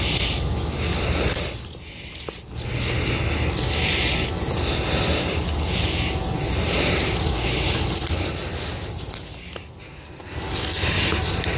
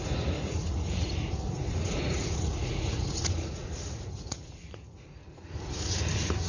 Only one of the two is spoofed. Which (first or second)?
second